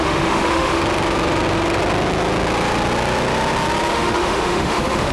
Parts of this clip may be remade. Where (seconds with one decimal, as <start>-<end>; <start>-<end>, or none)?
0.0-0.8; 3.9-5.1